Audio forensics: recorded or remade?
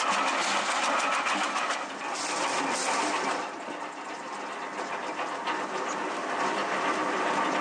recorded